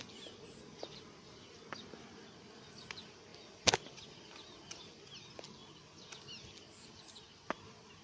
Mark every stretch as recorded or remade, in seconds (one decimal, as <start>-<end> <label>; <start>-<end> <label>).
0.0-3.3 recorded; 3.3-3.9 remade; 3.9-8.0 recorded